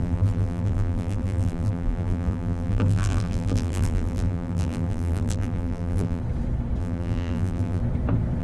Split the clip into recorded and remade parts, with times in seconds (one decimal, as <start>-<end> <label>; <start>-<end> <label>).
0.0-6.2 remade; 6.2-6.8 recorded; 6.8-7.8 remade; 7.8-8.4 recorded